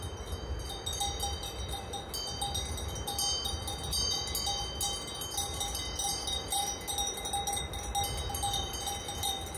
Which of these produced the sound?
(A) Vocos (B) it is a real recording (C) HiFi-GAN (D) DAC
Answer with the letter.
B